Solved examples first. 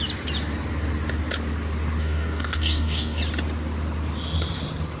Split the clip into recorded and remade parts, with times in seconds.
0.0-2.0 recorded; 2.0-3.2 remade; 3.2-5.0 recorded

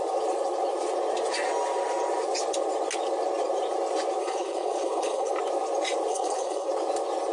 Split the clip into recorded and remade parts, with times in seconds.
0.0-4.2 recorded; 4.2-5.3 remade; 5.3-6.1 recorded; 6.1-6.7 remade; 6.7-7.3 recorded

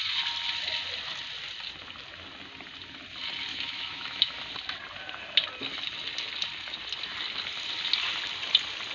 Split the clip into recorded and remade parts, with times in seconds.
0.0-3.5 recorded; 3.5-4.4 remade; 4.4-8.9 recorded

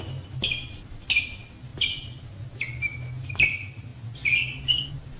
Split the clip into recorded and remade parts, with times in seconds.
0.0-5.2 recorded

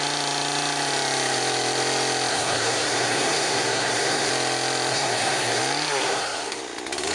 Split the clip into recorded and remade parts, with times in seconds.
0.0-2.3 recorded; 2.3-4.3 remade; 4.3-4.9 recorded; 4.9-5.6 remade; 5.6-6.0 recorded; 6.0-6.6 remade; 6.6-7.1 recorded